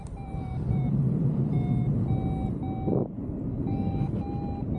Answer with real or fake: real